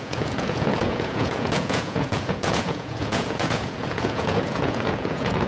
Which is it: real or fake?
fake